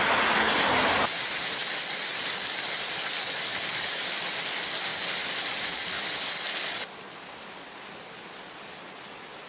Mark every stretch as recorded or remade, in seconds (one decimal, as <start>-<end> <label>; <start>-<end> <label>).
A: 0.0-3.5 recorded; 3.5-4.2 remade; 4.2-9.5 recorded